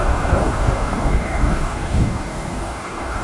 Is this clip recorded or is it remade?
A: remade